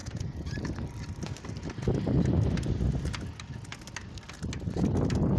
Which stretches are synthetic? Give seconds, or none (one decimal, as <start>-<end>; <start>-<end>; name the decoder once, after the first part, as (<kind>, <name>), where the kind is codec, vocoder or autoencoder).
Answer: 0.0-0.7 (vocoder, Vocos)